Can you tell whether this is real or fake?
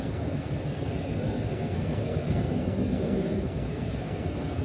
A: fake